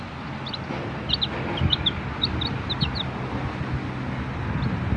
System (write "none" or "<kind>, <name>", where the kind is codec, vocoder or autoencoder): none